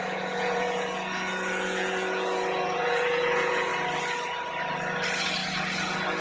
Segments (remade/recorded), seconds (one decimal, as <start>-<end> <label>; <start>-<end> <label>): 0.0-3.7 remade; 3.7-5.4 recorded; 5.4-6.2 remade